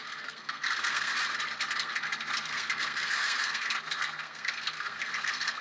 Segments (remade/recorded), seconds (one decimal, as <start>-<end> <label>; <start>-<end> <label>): 0.0-1.1 remade; 1.1-1.7 recorded; 1.7-5.6 remade